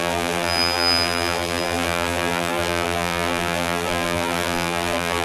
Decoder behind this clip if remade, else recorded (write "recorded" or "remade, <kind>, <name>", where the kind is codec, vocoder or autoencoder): remade, vocoder, BigVGAN v2